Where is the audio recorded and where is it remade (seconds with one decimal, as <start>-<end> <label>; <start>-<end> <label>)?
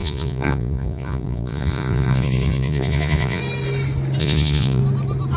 0.0-3.4 remade; 3.4-4.2 recorded; 4.2-4.8 remade; 4.8-5.4 recorded